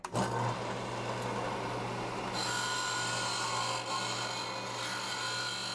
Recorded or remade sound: recorded